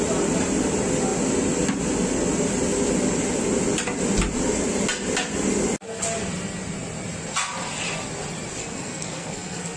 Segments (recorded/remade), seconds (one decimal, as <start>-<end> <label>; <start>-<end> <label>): 0.0-8.6 recorded; 8.6-9.8 remade